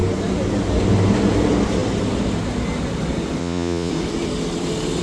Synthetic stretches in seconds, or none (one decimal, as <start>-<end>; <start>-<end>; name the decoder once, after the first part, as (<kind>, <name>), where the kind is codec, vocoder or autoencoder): 3.4-3.9 (vocoder, Vocos)

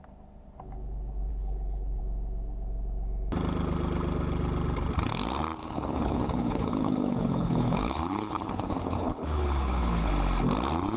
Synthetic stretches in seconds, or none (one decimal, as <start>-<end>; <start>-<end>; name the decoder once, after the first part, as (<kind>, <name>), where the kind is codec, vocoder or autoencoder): 1.3-2.0 (codec, HILCodec); 5.6-10.1

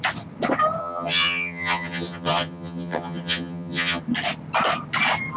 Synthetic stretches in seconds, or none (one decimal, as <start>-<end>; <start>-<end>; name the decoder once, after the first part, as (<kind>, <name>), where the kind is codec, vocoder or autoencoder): 0.8-4.0 (vocoder, HiFi-GAN)

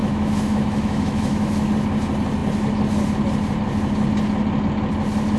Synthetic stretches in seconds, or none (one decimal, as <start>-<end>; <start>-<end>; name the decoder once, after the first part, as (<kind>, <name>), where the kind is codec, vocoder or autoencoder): 0.0-1.7 (autoencoder, DAC-VAE)